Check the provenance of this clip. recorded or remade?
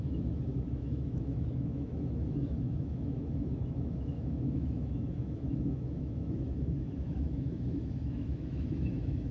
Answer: remade